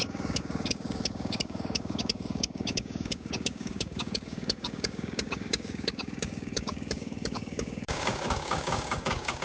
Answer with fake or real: fake